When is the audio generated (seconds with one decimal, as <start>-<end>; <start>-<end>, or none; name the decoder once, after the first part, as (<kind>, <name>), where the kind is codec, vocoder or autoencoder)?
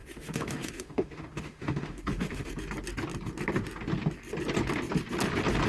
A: 0.0-2.5 (autoencoder, DAC-VAE)